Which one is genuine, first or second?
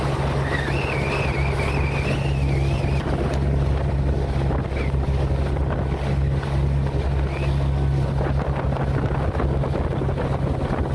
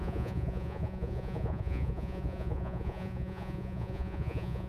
first